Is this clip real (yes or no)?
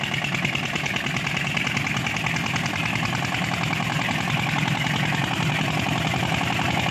no